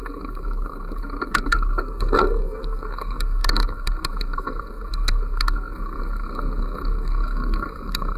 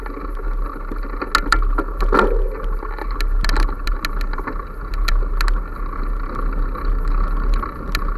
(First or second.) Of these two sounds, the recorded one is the second